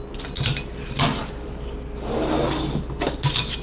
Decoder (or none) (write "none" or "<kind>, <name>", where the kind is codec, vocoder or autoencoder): none